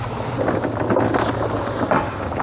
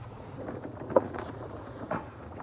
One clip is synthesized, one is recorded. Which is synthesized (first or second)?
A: second